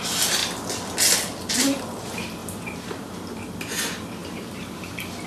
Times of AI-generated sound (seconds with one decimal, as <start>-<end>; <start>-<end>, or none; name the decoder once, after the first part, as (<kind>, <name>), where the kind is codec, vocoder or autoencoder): 4.2-5.3 (vocoder, BigVGAN v2)

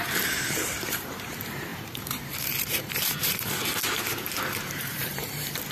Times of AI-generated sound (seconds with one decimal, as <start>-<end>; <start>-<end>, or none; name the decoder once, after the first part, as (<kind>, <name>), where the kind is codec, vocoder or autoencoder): 0.0-5.7 (vocoder, BigVGAN v2)

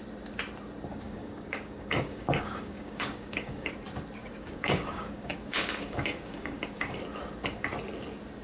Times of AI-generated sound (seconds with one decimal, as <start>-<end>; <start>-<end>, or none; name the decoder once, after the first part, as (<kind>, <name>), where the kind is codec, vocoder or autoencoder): 0.9-3.7 (codec, DAC); 4.2-7.0